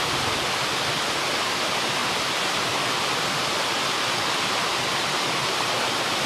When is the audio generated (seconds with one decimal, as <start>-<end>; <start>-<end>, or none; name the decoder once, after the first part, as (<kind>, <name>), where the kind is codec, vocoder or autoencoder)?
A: none